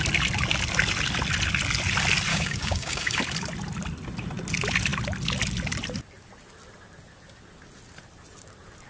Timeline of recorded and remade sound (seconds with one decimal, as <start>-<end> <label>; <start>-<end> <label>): 0.0-2.3 recorded; 2.3-3.2 remade; 3.2-8.9 recorded